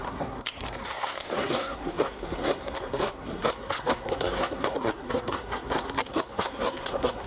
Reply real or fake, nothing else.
fake